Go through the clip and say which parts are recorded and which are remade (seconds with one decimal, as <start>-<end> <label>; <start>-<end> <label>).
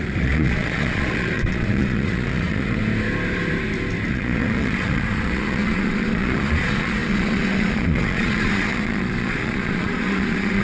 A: 0.0-2.8 remade; 2.8-4.1 recorded; 4.1-10.6 remade